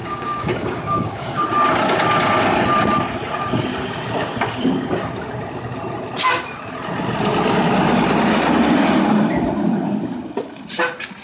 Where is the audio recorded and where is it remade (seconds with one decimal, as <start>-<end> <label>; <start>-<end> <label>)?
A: 0.0-1.4 remade; 1.4-11.2 recorded